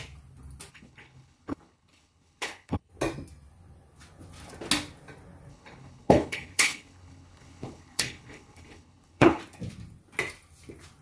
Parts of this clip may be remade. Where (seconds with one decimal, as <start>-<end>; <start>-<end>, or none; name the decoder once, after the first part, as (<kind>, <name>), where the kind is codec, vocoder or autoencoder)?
0.7-2.9 (codec, HILCodec); 5.5-9.4